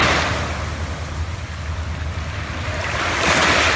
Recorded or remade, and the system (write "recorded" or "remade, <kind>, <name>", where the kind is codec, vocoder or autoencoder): recorded